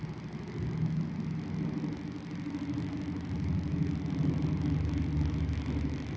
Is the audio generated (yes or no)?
no